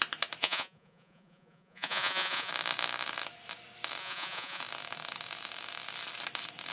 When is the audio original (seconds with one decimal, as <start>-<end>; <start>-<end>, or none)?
0.0-0.4; 2.5-4.0; 4.6-6.7